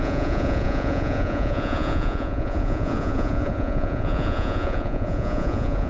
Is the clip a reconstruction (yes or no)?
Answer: yes